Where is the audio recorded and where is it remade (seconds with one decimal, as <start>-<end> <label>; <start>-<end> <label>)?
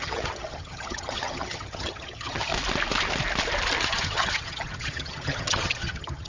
0.0-2.5 remade; 2.5-3.8 recorded; 3.8-6.3 remade